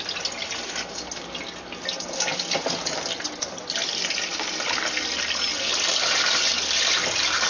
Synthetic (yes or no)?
no